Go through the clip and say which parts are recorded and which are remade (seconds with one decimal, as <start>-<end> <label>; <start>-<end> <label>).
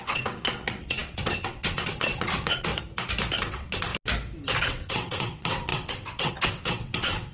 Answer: 0.0-2.7 remade; 2.7-3.4 recorded; 3.4-3.9 remade; 3.9-4.6 recorded; 4.6-7.3 remade